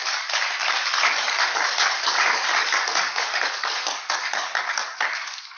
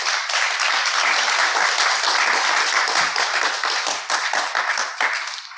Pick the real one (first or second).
second